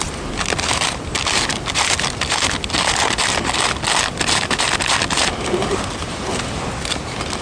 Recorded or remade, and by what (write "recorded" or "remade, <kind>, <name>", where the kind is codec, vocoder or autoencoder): recorded